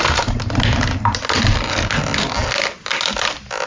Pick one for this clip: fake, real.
real